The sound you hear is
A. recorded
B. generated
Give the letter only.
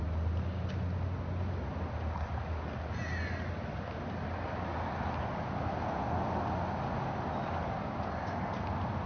A